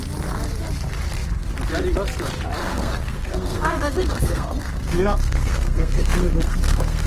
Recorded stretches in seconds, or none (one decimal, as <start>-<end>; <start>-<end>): 0.0-2.6